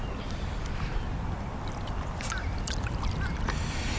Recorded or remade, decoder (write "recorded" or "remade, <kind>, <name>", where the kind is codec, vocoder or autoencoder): recorded